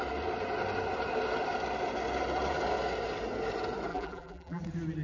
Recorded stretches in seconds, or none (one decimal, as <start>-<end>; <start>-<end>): 0.0-3.9; 4.6-5.0